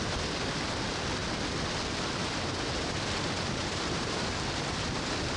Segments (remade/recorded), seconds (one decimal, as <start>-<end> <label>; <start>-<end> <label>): 0.0-2.2 recorded; 2.2-2.9 remade; 2.9-3.6 recorded; 3.6-4.2 remade; 4.2-5.4 recorded